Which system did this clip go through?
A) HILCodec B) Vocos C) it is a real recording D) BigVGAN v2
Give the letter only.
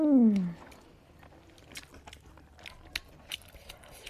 C